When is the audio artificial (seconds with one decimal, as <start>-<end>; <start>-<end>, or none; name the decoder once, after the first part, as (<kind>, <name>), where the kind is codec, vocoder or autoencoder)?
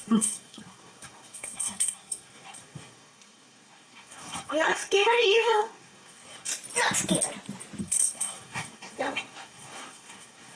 0.0-6.5 (codec, SNAC); 7.8-10.6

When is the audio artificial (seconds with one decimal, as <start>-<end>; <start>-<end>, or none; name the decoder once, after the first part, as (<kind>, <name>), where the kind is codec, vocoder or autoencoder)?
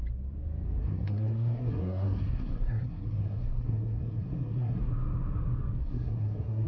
0.8-4.8 (codec, SNAC); 5.8-6.7